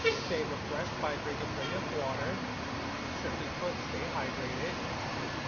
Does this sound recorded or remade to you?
recorded